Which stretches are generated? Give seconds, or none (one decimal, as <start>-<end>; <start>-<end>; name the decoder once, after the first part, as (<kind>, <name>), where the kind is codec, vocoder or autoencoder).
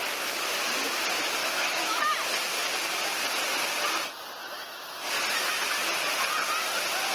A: 1.4-2.0 (autoencoder, DAC-VAE); 4.4-5.1